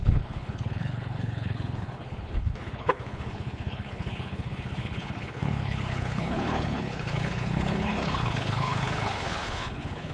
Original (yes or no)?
no